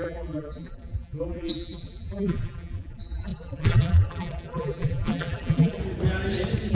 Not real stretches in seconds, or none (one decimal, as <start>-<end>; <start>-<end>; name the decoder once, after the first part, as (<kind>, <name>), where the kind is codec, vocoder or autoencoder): 0.0-5.8 (vocoder, BigVGAN v2)